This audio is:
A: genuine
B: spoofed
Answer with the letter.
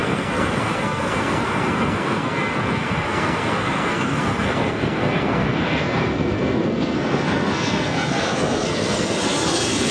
B